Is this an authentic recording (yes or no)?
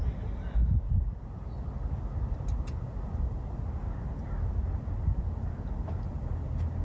yes